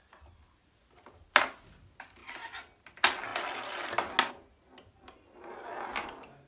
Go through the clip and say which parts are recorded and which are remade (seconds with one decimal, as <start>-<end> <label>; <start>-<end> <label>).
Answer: 0.0-6.5 recorded